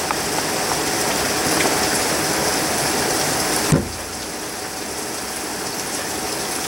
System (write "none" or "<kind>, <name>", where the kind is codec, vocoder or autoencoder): none